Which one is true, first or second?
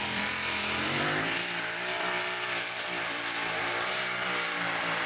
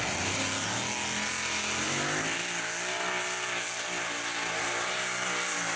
second